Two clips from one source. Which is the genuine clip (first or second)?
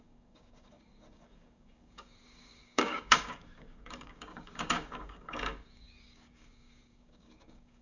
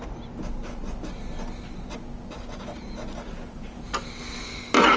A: second